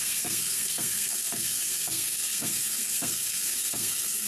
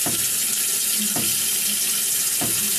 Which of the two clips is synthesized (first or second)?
first